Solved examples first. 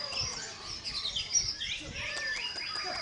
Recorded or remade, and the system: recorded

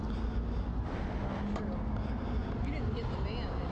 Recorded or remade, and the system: recorded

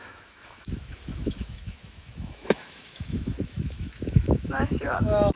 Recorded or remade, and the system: remade, autoencoder, DAC-VAE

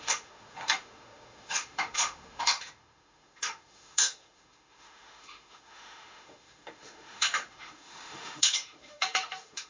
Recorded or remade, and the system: remade, autoencoder, DAC-VAE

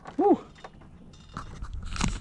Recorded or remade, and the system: recorded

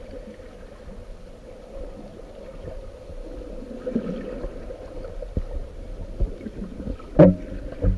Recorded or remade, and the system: recorded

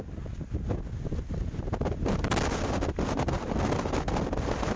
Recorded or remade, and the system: recorded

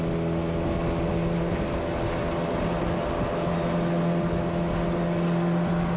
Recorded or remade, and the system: recorded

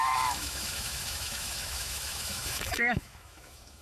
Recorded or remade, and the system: remade, autoencoder, DAC-VAE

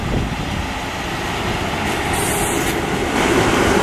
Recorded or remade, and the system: recorded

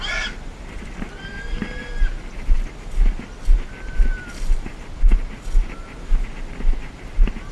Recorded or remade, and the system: recorded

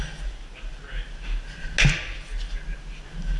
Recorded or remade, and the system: recorded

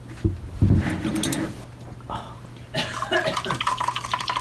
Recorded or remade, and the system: recorded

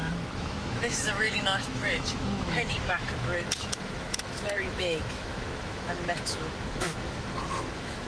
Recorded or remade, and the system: remade, autoencoder, DAC-VAE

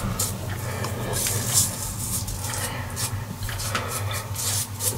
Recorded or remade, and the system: recorded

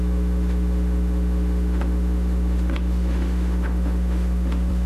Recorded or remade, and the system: remade, autoencoder, DAC-VAE